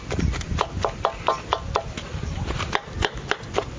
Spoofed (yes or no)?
no